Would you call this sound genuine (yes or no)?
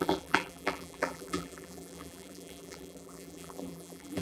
no